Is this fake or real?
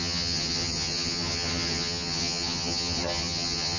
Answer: fake